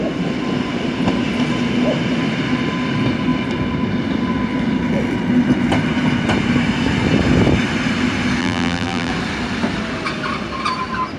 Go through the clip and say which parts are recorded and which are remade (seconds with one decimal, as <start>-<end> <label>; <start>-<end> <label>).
0.0-8.4 recorded; 8.4-9.1 remade; 9.1-11.2 recorded